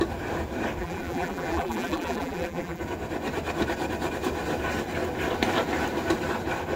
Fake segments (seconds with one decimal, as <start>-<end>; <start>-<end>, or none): 0.8-2.8